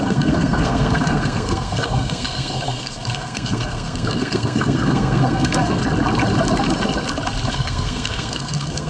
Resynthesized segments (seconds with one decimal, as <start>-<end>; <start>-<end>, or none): 0.0-5.8; 7.5-8.9